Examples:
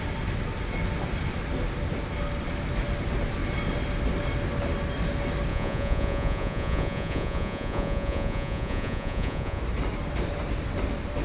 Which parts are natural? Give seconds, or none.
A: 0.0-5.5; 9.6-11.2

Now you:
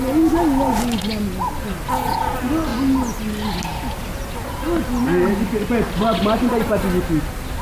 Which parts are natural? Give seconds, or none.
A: 0.0-7.6